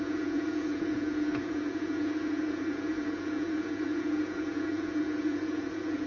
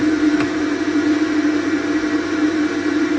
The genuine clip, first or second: second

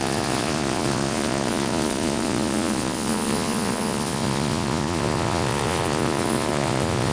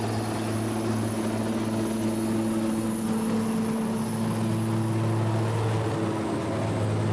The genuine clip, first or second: second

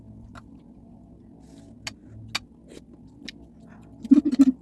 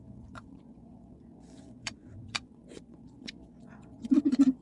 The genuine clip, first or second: first